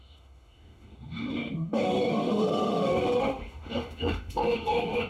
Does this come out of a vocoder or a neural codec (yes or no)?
yes